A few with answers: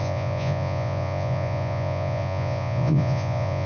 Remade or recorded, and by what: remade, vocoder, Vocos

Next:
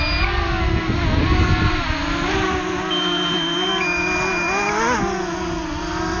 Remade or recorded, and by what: recorded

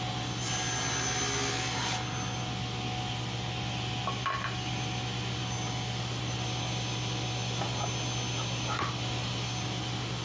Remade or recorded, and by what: recorded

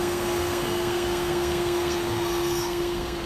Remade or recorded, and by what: remade, codec, SNAC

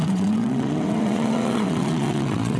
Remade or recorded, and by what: remade, vocoder, WaveNeXt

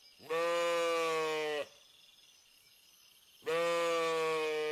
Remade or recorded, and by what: recorded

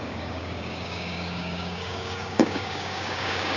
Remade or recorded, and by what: remade, codec, DAC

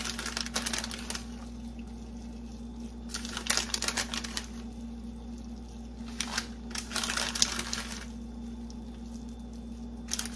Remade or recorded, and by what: recorded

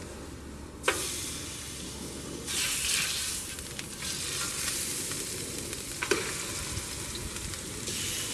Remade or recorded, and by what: recorded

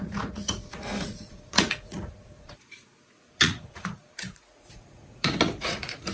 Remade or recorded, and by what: remade, vocoder, Vocos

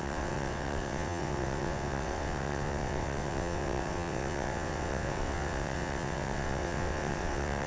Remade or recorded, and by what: remade, vocoder, WaveNeXt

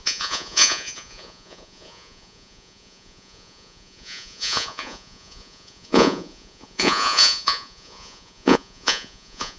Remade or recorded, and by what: remade, vocoder, Vocos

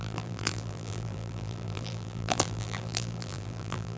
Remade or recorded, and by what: remade, vocoder, BigVGAN v2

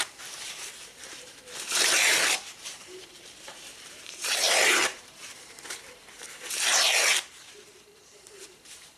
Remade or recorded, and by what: remade, vocoder, BigVGAN v2